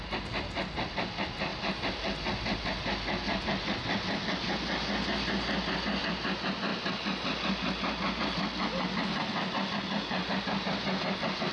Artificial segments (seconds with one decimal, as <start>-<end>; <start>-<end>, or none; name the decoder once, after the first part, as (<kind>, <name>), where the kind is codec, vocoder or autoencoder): none